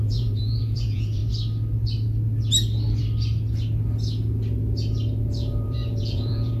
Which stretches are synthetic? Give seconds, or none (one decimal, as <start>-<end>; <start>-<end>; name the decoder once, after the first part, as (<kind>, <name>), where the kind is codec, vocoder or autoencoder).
0.0-1.2 (vocoder, Vocos); 5.2-6.6